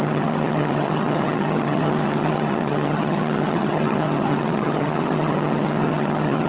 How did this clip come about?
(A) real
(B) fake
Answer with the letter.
B